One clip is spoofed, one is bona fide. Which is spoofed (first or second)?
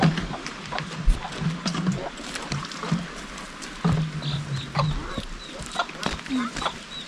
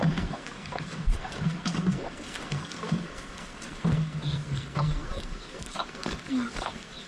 second